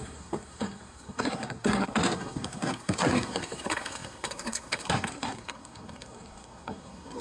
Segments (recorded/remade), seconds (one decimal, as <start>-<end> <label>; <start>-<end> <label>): 0.0-7.2 remade